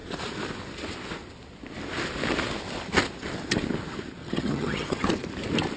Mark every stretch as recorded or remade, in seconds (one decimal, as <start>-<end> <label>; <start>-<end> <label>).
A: 0.0-4.2 recorded; 4.2-5.1 remade; 5.1-5.8 recorded